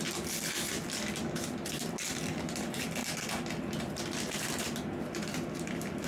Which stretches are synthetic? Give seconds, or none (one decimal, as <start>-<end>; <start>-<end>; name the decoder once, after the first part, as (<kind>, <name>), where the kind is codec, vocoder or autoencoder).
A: none